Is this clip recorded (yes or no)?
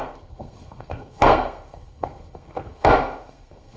no